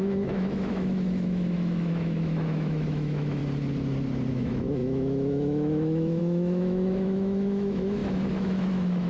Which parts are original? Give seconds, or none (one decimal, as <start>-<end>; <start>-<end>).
3.4-4.3